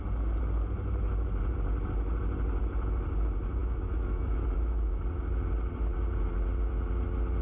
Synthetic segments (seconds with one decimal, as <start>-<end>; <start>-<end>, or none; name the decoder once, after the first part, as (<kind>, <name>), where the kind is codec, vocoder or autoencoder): 3.6-5.0 (autoencoder, DAC-VAE)